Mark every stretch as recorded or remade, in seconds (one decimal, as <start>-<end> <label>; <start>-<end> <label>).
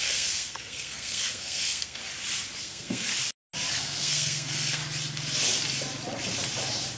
0.0-2.0 remade; 2.0-2.6 recorded; 2.6-3.1 remade; 3.1-3.7 recorded; 3.7-4.8 remade; 4.8-7.0 recorded